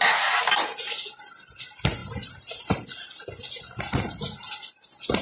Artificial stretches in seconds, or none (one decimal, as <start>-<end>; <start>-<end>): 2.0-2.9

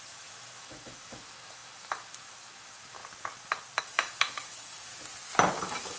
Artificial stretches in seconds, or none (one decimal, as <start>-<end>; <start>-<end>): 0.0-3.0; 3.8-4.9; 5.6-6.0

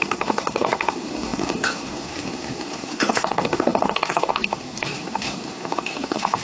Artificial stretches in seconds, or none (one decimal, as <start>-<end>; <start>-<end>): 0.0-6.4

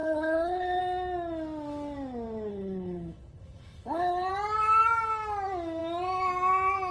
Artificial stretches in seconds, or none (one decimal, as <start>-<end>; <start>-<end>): 0.0-0.8; 2.5-4.3

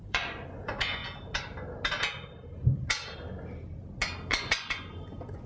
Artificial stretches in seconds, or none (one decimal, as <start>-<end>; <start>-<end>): 0.0-1.0; 4.3-5.5

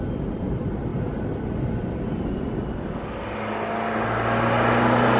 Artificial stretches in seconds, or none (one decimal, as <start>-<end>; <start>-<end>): none

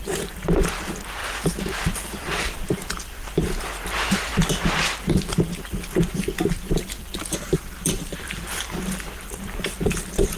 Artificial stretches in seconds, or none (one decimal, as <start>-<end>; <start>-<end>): 0.0-1.2; 1.8-4.3; 5.8-10.4

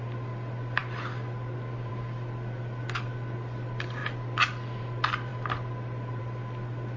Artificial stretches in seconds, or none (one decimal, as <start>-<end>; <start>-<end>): none